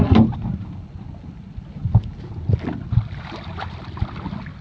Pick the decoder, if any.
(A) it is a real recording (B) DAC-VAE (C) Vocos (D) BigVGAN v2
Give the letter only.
A